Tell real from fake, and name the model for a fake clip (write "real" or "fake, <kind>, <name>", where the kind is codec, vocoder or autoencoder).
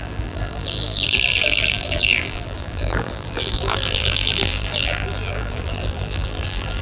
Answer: fake, vocoder, BigVGAN v2